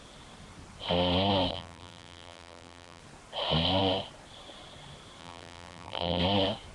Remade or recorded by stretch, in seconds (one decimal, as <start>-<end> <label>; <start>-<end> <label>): 0.0-1.5 recorded; 1.5-3.0 remade; 3.0-5.2 recorded; 5.2-6.2 remade; 6.2-6.7 recorded